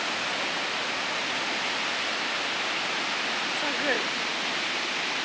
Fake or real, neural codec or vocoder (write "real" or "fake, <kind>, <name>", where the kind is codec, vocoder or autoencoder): real